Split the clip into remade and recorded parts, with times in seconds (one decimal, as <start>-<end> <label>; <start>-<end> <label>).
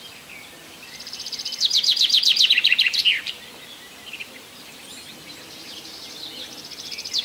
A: 0.0-0.6 recorded; 0.6-4.9 remade; 4.9-7.2 recorded